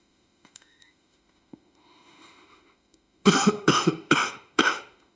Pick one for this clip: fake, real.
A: fake